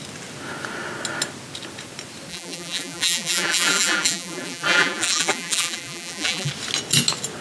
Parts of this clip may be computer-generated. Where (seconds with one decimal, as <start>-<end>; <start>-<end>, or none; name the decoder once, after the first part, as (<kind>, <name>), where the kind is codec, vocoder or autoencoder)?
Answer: 2.3-6.5 (vocoder, BigVGAN v2)